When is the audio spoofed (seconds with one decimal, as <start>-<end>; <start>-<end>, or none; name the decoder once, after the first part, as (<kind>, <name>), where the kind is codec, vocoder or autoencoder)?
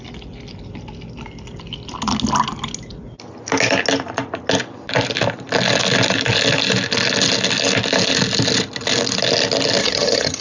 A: 9.8-10.4 (vocoder, HiFi-GAN)